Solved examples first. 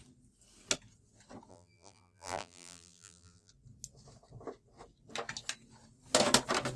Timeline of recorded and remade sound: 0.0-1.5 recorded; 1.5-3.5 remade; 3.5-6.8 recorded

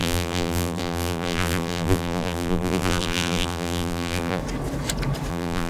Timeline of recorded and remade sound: 0.0-4.4 remade; 4.4-5.3 recorded; 5.3-5.7 remade

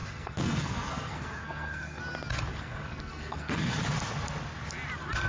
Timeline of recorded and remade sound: 0.0-2.0 remade; 2.0-2.5 recorded; 2.5-3.8 remade; 3.8-5.3 recorded

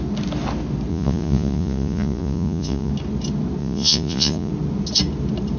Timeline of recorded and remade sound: 0.0-0.9 recorded; 0.9-2.9 remade; 2.9-3.6 recorded; 3.6-4.5 remade; 4.5-5.6 recorded

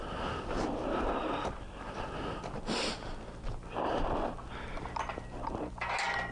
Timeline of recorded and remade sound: 0.0-6.3 recorded

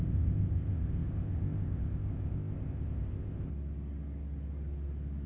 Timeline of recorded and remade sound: 0.0-3.5 remade; 3.5-5.3 recorded

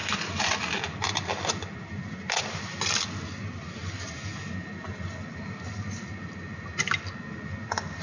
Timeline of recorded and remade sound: 0.0-4.3 remade; 4.3-4.9 recorded; 4.9-8.0 remade

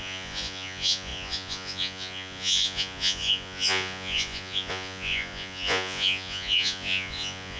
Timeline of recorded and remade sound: 0.0-7.6 remade